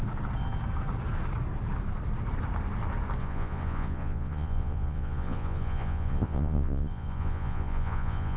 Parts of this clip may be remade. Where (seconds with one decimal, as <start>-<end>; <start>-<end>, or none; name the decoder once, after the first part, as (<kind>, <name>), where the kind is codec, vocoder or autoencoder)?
3.2-8.4 (vocoder, Vocos)